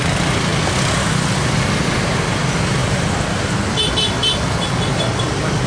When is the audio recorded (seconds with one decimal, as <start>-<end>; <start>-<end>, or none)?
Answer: 0.0-2.8; 3.9-5.7